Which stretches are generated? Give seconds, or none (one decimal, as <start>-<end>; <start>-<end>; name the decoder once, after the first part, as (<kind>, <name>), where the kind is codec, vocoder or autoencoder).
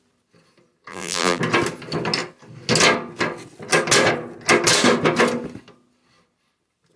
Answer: 0.9-1.4 (vocoder, BigVGAN v2)